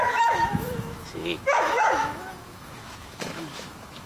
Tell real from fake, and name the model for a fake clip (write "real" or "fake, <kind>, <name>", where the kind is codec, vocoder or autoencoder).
fake, autoencoder, DAC-VAE